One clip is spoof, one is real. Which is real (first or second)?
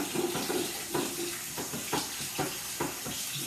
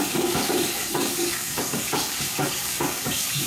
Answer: first